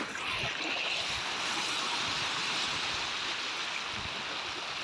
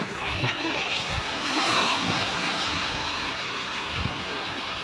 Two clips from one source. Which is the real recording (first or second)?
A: first